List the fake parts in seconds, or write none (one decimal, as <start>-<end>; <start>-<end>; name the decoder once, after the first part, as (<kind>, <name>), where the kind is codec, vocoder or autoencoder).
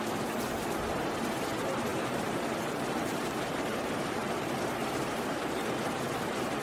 1.9-5.4 (vocoder, BigVGAN v2)